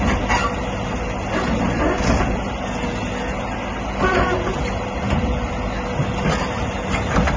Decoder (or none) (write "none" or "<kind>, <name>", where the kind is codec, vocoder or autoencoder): none